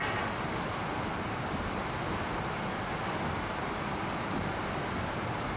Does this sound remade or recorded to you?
recorded